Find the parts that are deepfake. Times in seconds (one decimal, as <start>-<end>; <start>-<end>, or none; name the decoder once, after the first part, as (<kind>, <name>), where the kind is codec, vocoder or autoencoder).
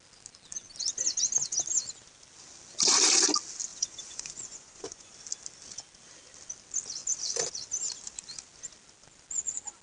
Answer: 3.7-5.1 (vocoder, Vocos)